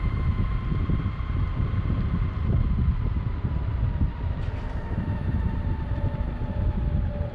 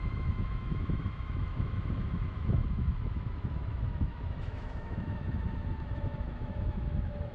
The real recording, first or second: first